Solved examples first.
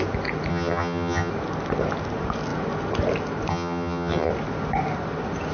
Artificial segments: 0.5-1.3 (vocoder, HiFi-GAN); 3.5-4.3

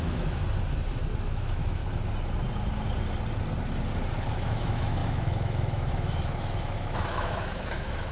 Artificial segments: 0.0-0.4 (autoencoder, DAC-VAE); 1.3-1.8; 4.3-8.1

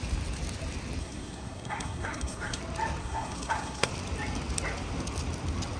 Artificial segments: 1.0-2.6 (codec, SNAC); 3.0-3.9

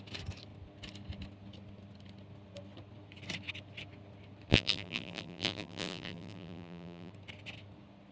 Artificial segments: 4.5-7.1 (vocoder, BigVGAN v2)

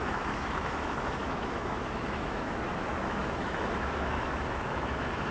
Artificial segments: 0.0-5.3 (autoencoder, DAC-VAE)

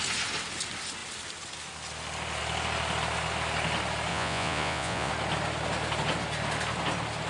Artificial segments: 4.1-5.1 (vocoder, Vocos)

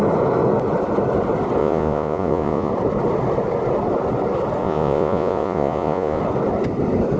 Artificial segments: 1.6-2.7 (vocoder, Vocos); 4.6-6.2